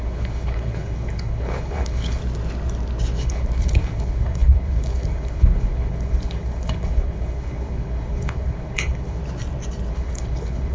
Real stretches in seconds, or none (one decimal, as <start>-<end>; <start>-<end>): 2.2-3.2; 9.2-9.9

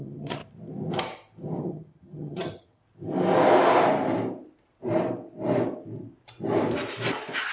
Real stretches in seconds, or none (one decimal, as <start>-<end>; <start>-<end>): 0.4-1.6; 2.8-7.5